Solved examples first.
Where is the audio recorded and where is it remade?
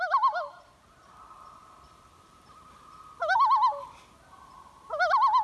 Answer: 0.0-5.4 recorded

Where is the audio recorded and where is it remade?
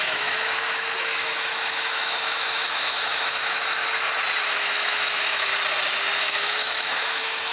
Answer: 0.0-3.8 remade; 3.8-4.4 recorded; 4.4-5.5 remade; 5.5-6.2 recorded; 6.2-7.5 remade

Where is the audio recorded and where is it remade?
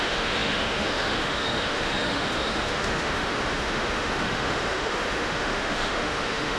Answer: 0.0-6.6 remade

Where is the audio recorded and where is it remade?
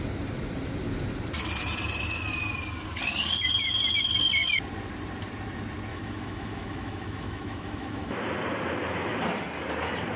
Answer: 0.0-5.9 recorded; 5.9-8.2 remade; 8.2-10.2 recorded